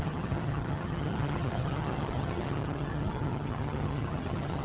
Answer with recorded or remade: remade